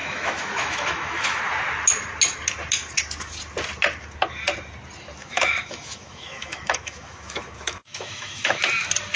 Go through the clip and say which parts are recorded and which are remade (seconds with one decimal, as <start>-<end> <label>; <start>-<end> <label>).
0.0-1.4 remade; 1.4-5.2 recorded; 5.2-8.6 remade; 8.6-9.2 recorded